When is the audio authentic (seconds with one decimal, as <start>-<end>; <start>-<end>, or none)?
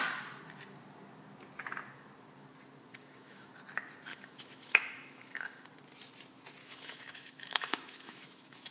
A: 0.0-2.9; 3.5-4.1; 5.6-6.6